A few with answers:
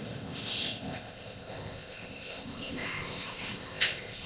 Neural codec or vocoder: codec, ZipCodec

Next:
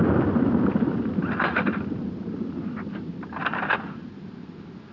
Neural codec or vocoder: none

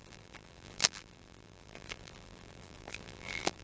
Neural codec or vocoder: vocoder, BigVGAN v2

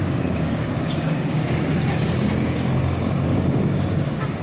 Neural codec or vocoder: codec, DAC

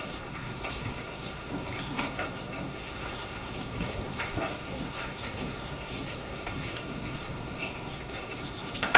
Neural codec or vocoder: codec, SNAC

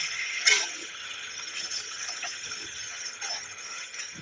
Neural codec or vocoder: vocoder, HiFi-GAN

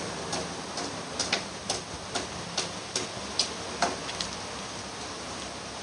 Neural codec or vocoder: none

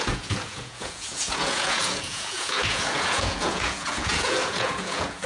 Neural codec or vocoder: vocoder, Vocos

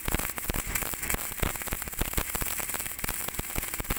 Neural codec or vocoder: none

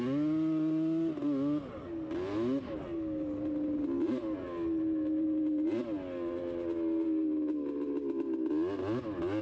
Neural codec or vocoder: none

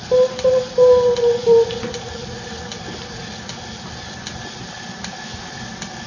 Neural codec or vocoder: none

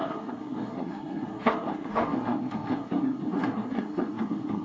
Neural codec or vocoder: codec, SNAC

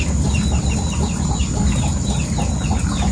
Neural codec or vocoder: none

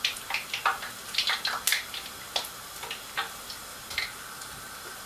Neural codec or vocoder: none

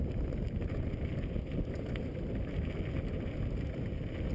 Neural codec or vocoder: none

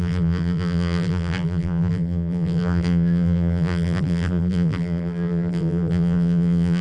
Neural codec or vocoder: vocoder, BigVGAN v2